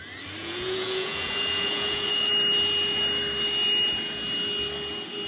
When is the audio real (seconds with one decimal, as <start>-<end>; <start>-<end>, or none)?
0.0-0.4; 2.3-5.3